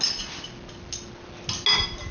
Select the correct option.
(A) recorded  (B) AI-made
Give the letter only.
A